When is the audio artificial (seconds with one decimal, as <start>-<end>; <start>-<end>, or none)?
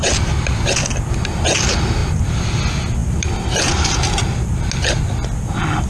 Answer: 3.0-4.2